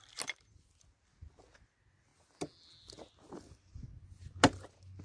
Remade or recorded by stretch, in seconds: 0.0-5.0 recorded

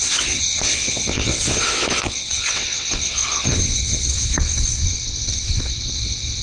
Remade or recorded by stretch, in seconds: 0.0-6.4 remade

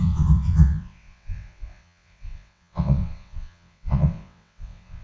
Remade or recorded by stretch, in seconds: 0.0-5.0 remade

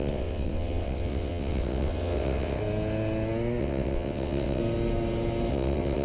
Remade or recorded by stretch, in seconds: 0.0-2.6 remade; 2.6-3.6 recorded; 3.6-4.6 remade; 4.6-5.5 recorded; 5.5-6.0 remade

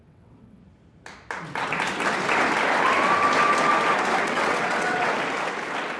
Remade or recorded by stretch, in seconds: 0.0-0.6 remade; 0.6-4.2 recorded; 4.2-5.1 remade; 5.1-6.0 recorded

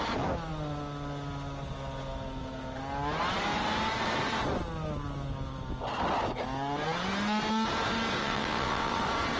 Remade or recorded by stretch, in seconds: 0.0-8.2 recorded; 8.2-9.0 remade; 9.0-9.4 recorded